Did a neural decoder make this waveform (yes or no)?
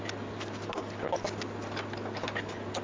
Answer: no